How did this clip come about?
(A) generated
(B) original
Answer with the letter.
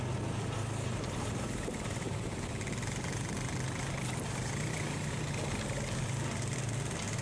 B